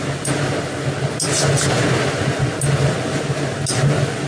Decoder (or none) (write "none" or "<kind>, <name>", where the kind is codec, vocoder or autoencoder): none